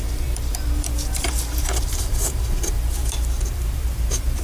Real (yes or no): no